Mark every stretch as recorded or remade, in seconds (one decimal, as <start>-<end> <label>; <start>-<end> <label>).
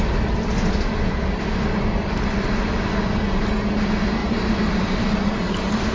0.0-4.2 recorded; 4.2-5.9 remade